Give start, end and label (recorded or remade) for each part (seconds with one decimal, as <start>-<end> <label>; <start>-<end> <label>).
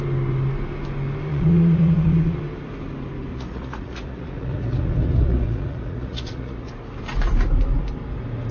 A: 0.0-1.3 recorded; 1.3-2.4 remade; 2.4-3.3 recorded; 3.3-6.7 remade; 6.7-8.5 recorded